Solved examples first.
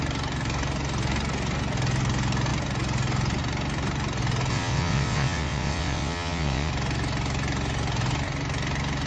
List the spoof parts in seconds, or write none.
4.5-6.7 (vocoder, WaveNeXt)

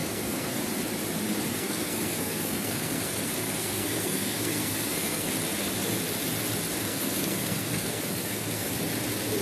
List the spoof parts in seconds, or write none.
0.0-0.6 (codec, SNAC); 1.5-5.3; 6.8-8.7

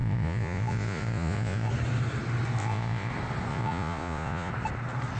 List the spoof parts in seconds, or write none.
0.0-1.7 (vocoder, Vocos); 2.6-3.1; 3.5-4.5

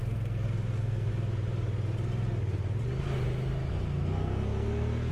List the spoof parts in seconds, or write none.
0.0-1.1 (codec, SNAC); 3.7-5.1

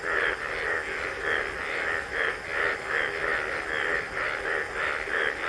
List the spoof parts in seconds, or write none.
none